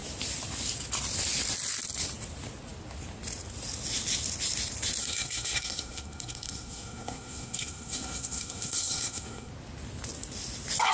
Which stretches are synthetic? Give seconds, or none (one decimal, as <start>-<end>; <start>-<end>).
5.0-9.5